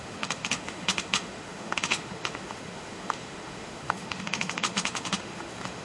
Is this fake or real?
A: fake